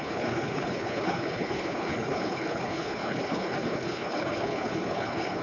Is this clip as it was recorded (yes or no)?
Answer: no